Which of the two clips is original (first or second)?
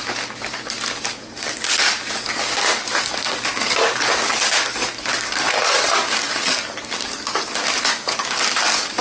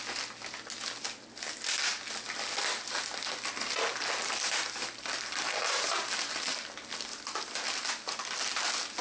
second